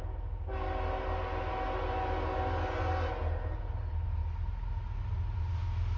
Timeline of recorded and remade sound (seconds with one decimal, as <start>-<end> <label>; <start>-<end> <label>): 0.0-6.0 recorded